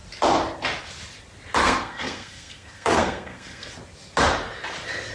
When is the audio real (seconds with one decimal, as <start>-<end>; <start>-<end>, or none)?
0.0-1.6; 3.7-5.1